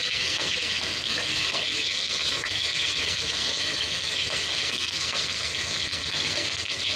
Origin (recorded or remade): remade